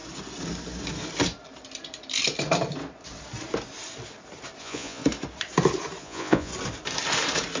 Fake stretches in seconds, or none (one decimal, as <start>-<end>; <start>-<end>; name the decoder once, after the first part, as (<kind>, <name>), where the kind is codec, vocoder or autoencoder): 4.6-5.0 (vocoder, Vocos); 6.0-6.5